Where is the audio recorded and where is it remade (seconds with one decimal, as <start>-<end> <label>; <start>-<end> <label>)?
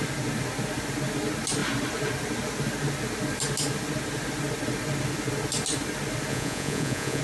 0.0-6.3 recorded; 6.3-7.2 remade